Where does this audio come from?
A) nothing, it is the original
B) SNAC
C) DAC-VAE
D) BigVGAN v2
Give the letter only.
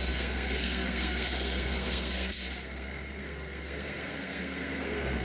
B